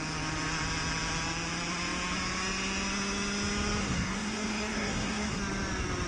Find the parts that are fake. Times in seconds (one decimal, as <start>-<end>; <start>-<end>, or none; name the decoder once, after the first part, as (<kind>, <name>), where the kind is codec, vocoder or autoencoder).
3.8-5.4 (codec, SNAC)